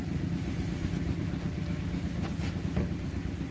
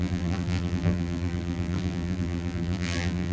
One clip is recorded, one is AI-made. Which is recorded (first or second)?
first